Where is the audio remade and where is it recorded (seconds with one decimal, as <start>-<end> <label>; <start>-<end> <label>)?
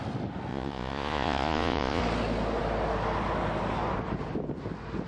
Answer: 0.0-0.5 recorded; 0.5-2.0 remade; 2.0-5.1 recorded